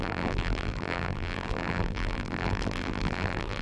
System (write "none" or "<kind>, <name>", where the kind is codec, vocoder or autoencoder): vocoder, BigVGAN v2